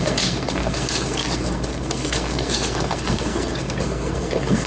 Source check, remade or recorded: remade